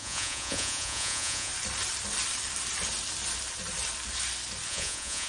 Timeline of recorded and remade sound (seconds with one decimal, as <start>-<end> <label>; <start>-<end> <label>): 0.0-1.5 remade; 1.5-4.7 recorded; 4.7-5.3 remade